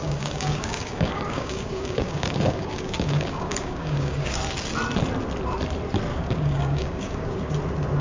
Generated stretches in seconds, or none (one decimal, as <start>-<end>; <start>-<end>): 0.0-4.4; 6.1-7.5